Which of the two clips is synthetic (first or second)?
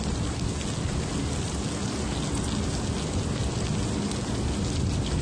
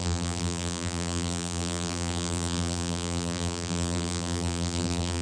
second